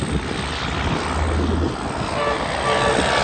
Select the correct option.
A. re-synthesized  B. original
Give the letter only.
B